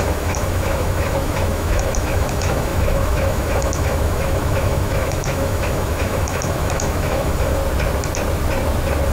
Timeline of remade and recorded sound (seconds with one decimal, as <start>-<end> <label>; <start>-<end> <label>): 0.0-7.6 remade; 7.6-9.1 recorded

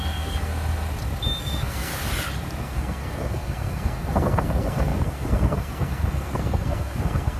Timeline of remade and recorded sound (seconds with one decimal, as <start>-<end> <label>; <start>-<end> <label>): 0.0-0.5 remade; 0.5-1.4 recorded; 1.4-1.9 remade; 1.9-2.6 recorded; 2.6-7.4 remade

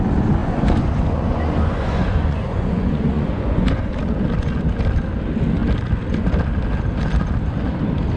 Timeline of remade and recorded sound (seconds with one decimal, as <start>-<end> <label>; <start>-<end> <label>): 0.0-0.4 recorded; 0.4-3.9 remade; 3.9-8.2 recorded

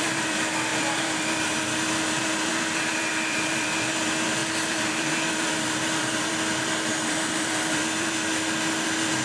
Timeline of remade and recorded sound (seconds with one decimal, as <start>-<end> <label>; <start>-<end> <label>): 0.0-9.2 remade

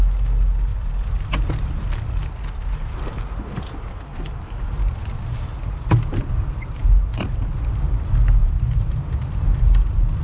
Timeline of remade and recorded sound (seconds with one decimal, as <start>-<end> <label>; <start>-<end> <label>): 0.0-0.7 recorded; 0.7-1.5 remade; 1.5-4.1 recorded; 4.1-6.2 remade; 6.2-6.8 recorded; 6.8-7.5 remade; 7.5-8.4 recorded; 8.4-10.2 remade